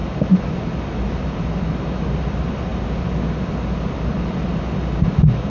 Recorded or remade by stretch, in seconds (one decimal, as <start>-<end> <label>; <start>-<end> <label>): 0.0-5.5 recorded